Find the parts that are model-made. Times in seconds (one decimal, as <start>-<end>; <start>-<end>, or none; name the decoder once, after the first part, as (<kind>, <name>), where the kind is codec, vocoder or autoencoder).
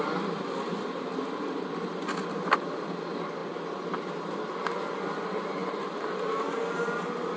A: 5.6-6.6 (vocoder, BigVGAN v2)